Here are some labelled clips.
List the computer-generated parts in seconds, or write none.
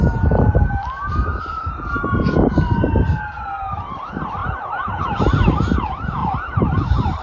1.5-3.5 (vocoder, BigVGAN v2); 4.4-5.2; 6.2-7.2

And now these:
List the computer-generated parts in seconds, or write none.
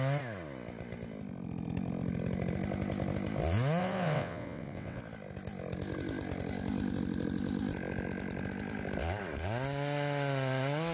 3.8-5.0 (vocoder, WaveNeXt)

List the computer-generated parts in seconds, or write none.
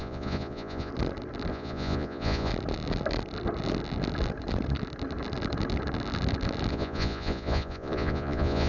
0.0-0.9 (vocoder, Vocos); 1.5-2.5; 6.7-8.7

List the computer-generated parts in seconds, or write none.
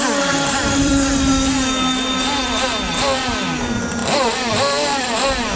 0.0-0.9 (vocoder, BigVGAN v2); 2.9-5.6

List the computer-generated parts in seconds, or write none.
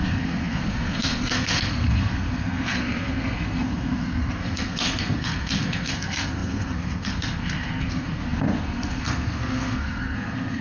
0.0-10.6 (codec, SNAC)